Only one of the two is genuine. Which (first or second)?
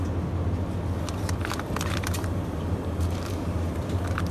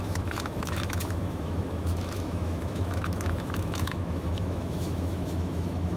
first